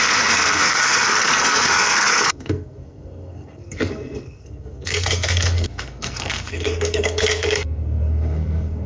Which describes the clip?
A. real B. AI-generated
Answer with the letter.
B